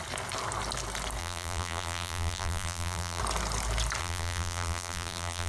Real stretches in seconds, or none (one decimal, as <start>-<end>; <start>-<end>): 0.0-1.2; 3.2-4.0